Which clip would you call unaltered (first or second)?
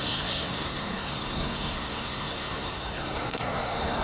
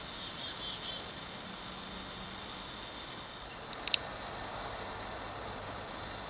second